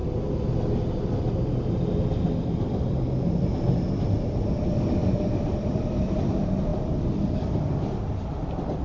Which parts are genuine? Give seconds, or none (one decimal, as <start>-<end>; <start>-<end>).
0.0-8.8